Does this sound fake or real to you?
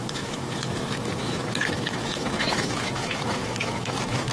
fake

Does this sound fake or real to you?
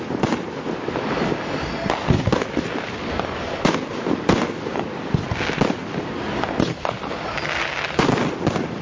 real